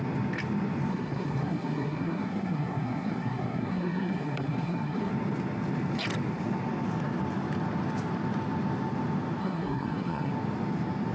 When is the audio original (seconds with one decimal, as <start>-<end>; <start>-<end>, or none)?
0.0-0.9; 5.1-9.4; 10.3-11.1